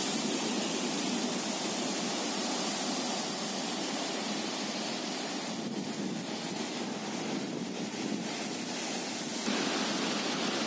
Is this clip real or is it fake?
real